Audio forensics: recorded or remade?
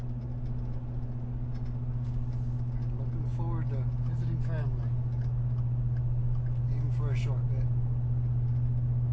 recorded